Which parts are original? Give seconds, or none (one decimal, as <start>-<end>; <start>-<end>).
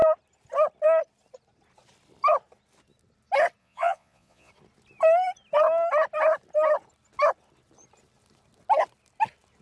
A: 0.0-3.6; 4.5-9.6